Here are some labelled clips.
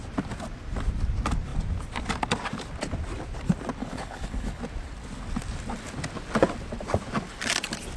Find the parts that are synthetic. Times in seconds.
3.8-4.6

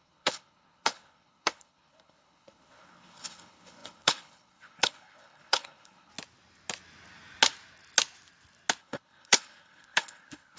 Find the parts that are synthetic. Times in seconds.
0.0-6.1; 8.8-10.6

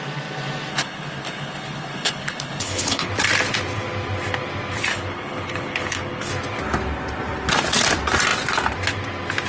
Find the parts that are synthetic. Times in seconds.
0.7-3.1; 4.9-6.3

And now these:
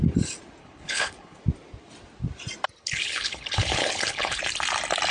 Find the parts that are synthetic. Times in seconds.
0.6-1.4; 2.8-4.4